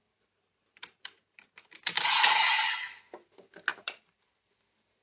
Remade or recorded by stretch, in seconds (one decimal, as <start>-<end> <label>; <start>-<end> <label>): 0.0-3.0 remade; 3.0-3.7 recorded; 3.7-4.5 remade; 4.5-5.0 recorded